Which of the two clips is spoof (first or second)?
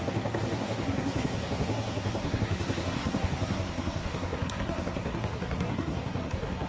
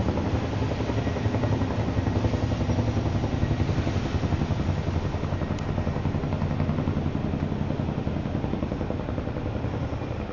first